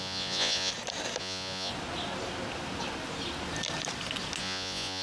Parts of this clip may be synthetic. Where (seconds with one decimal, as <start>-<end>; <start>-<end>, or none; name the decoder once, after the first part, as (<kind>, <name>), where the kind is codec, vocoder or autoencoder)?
0.0-0.7 (vocoder, Vocos); 1.2-1.7; 4.4-5.0